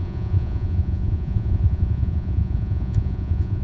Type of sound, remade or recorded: remade